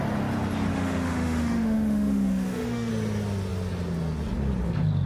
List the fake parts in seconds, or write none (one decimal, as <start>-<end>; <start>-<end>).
0.7-2.9